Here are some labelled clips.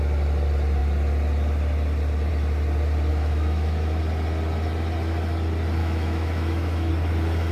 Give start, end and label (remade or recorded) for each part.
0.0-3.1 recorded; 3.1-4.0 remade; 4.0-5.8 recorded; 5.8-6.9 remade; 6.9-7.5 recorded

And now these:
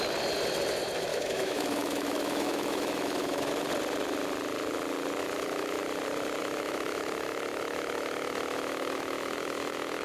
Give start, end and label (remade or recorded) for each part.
0.0-1.1 recorded; 1.1-3.7 remade; 3.7-5.2 recorded; 5.2-5.8 remade; 5.8-6.4 recorded; 6.4-10.0 remade

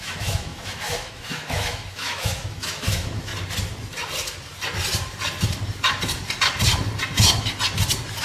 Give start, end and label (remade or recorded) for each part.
0.0-3.3 remade; 3.3-8.2 recorded